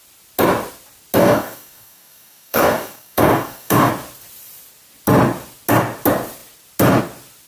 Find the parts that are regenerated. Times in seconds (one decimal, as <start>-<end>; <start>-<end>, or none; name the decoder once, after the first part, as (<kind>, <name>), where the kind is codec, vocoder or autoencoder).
1.2-3.9 (codec, DAC)